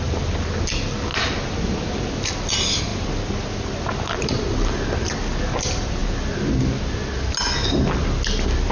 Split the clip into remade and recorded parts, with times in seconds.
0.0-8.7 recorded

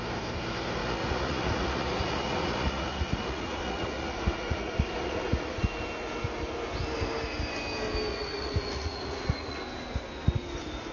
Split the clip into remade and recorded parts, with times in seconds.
0.0-0.8 recorded; 0.8-5.8 remade; 5.8-8.1 recorded; 8.1-9.6 remade; 9.6-10.9 recorded

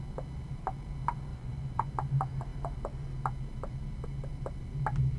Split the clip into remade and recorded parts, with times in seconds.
0.0-1.3 recorded; 1.3-1.9 remade; 1.9-5.2 recorded

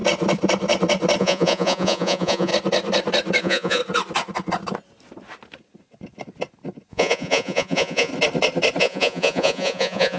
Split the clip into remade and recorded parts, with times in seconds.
0.0-1.2 recorded; 1.2-2.5 remade; 2.5-3.4 recorded; 3.4-3.8 remade; 3.8-6.9 recorded; 6.9-8.1 remade; 8.1-8.8 recorded; 8.8-10.2 remade

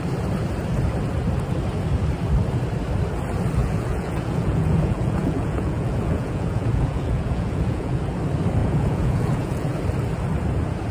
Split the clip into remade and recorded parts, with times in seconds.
0.0-3.6 recorded; 3.6-8.0 remade; 8.0-8.6 recorded; 8.6-9.8 remade; 9.8-10.9 recorded